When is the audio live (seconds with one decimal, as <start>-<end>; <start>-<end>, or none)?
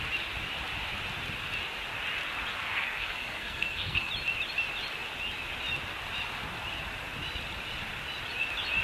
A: 0.0-2.5; 4.1-8.8